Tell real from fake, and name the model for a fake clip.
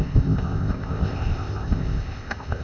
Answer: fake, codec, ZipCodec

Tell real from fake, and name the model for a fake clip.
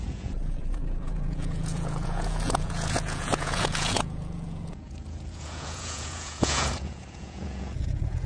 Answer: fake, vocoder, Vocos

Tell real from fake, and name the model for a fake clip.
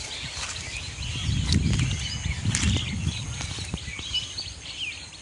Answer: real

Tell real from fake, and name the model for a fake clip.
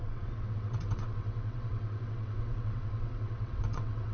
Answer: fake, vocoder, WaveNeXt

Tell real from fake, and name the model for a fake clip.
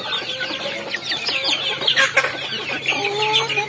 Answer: real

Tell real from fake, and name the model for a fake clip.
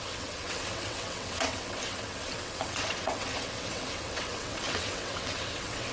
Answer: fake, vocoder, WaveNeXt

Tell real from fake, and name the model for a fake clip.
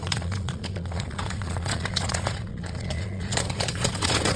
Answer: fake, vocoder, Vocos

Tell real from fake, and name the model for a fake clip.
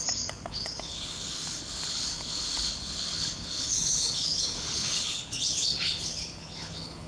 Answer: fake, codec, HILCodec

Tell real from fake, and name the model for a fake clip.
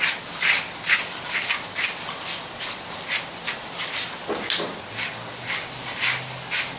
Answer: real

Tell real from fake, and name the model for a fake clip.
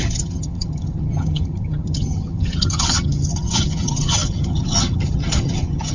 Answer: fake, vocoder, HiFi-GAN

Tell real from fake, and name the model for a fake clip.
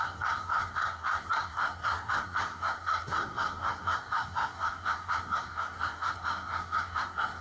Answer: fake, codec, SNAC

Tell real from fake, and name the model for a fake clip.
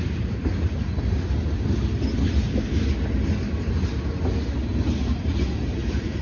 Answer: real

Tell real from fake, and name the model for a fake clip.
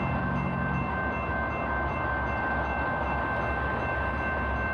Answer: real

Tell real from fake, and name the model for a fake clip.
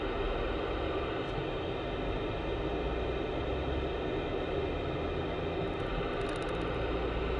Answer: real